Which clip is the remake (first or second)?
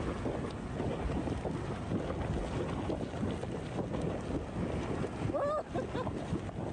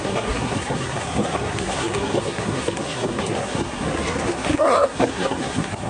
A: second